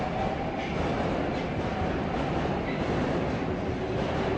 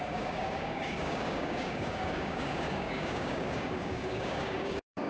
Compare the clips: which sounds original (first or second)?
first